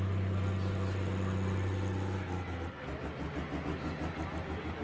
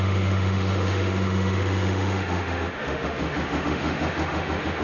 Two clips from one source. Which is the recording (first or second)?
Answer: first